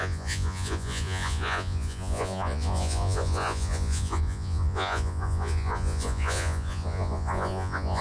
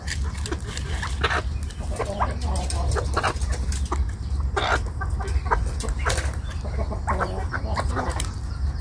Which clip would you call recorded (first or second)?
second